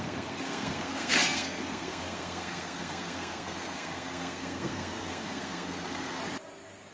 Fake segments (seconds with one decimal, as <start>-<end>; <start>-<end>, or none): 0.0-6.2